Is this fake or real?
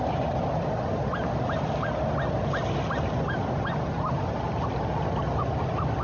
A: real